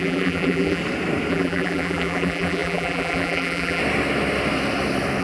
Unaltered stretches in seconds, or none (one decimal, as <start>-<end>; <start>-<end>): 0.8-1.3; 3.8-5.2